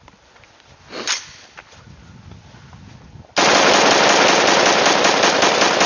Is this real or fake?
real